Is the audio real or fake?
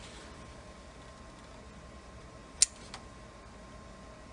real